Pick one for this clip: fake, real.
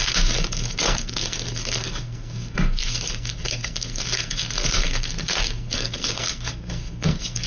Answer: fake